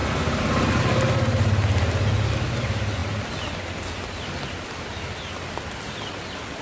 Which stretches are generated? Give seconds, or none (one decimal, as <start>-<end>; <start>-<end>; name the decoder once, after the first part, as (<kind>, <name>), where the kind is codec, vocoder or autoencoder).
none